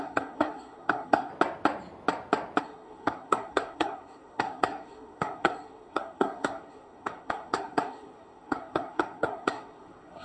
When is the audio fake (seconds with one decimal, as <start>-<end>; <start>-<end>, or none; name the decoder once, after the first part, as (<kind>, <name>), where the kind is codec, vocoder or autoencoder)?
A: 0.0-1.3 (codec, SNAC); 2.6-10.2